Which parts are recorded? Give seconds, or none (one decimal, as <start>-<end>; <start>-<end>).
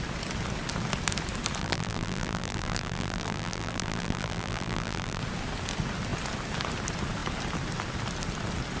0.0-1.6; 5.2-8.8